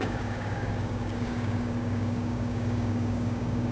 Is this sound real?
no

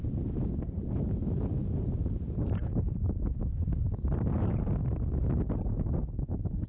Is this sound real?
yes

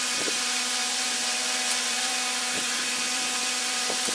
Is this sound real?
no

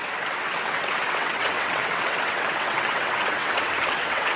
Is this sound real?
no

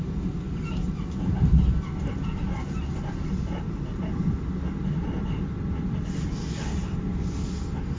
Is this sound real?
yes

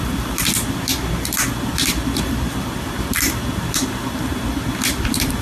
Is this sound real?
yes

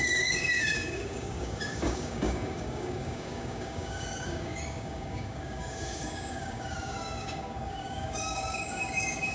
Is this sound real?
no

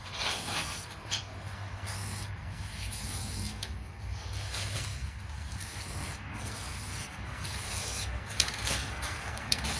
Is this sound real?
no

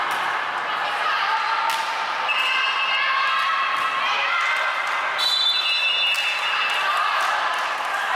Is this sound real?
yes